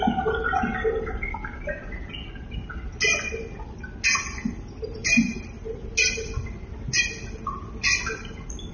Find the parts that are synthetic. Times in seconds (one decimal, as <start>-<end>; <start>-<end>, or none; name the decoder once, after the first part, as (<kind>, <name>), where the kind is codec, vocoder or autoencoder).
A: none